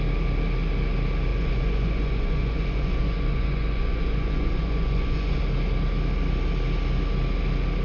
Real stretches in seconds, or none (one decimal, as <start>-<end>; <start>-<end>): 0.0-1.3; 5.4-7.8